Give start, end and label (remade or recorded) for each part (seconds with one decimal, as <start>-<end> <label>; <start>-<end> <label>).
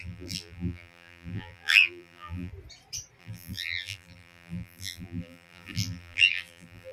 0.0-2.5 remade; 2.5-3.2 recorded; 3.2-6.9 remade